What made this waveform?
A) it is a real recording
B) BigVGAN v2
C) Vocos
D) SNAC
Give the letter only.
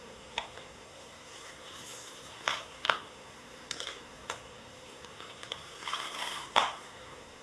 D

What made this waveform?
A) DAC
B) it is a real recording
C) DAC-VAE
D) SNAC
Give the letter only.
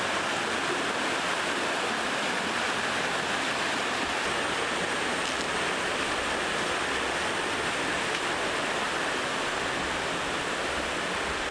B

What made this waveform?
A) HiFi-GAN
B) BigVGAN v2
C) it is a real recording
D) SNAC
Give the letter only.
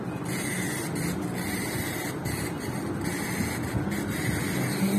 C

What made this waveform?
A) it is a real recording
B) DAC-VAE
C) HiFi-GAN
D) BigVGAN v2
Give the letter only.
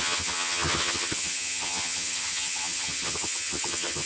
C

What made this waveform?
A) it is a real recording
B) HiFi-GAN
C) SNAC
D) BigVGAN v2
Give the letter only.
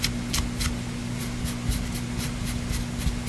A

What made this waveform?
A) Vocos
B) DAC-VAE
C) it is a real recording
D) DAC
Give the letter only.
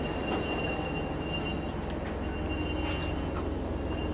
C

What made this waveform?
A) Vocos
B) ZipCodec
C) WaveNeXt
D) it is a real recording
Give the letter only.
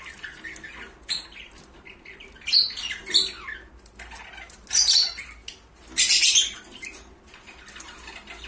D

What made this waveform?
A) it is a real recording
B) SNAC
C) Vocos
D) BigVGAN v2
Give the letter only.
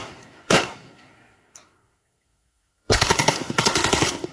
B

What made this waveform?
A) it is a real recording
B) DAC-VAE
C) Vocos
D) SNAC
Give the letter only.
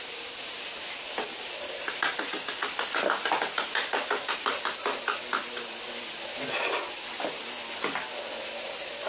A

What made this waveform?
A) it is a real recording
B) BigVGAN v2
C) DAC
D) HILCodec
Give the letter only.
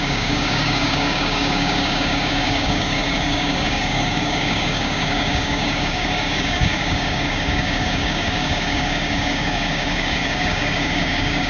C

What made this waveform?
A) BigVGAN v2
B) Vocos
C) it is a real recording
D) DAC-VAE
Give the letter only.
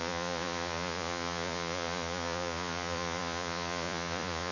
B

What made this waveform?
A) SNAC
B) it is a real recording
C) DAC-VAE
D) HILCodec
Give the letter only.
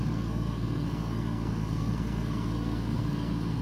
A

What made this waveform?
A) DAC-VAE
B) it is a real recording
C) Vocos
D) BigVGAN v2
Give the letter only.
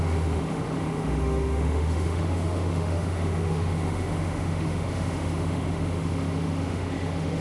A